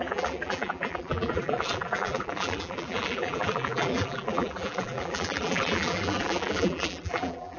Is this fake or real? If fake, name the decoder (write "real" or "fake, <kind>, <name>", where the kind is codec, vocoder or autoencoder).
fake, vocoder, BigVGAN v2